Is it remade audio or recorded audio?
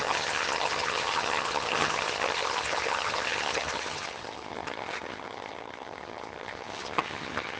remade